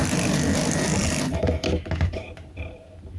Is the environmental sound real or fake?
real